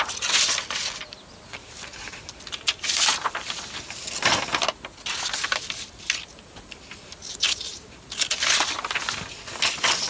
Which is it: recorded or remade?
recorded